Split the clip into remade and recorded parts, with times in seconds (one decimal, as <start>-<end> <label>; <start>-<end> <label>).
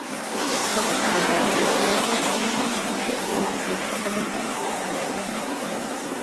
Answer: 0.0-6.2 remade